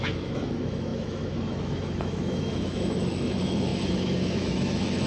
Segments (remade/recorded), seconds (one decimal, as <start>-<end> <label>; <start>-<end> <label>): 0.0-5.1 remade